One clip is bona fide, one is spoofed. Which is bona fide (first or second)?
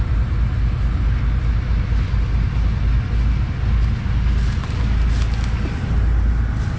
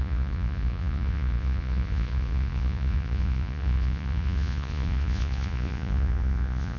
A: first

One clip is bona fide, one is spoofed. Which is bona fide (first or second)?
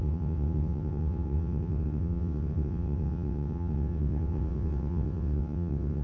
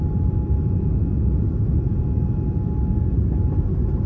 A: second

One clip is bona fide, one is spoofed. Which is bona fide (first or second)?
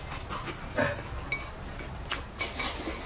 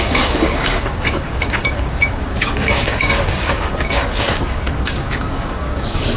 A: first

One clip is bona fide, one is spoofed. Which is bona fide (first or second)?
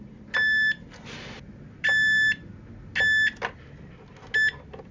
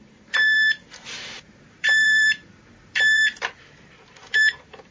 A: first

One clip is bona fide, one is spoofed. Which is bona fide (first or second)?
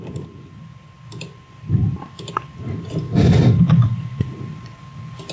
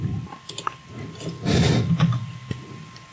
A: second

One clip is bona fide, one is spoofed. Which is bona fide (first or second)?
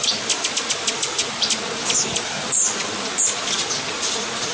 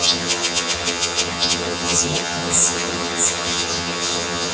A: first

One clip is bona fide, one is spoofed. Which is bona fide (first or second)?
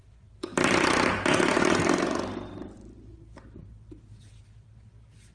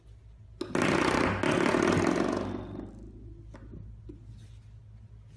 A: second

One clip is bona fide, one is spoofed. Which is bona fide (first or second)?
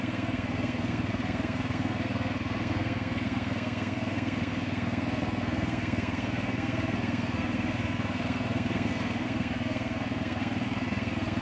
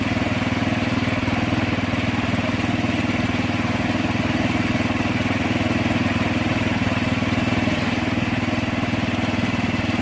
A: second